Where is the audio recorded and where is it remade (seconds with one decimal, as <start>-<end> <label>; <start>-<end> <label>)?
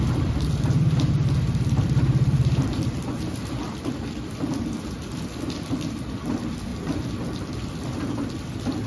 0.0-6.7 remade; 6.7-7.4 recorded; 7.4-8.9 remade